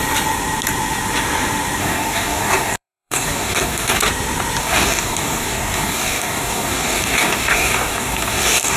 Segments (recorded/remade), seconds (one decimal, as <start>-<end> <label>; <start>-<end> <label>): 0.0-1.8 recorded; 1.8-4.0 remade; 4.0-4.6 recorded; 4.6-8.8 remade